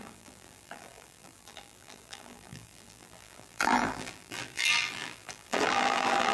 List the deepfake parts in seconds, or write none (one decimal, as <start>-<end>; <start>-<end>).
0.0-6.3